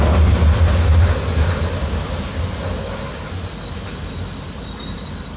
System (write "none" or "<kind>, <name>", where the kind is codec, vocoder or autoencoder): none